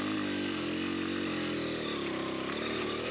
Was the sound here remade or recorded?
recorded